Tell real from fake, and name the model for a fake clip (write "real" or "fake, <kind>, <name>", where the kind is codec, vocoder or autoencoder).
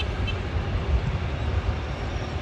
real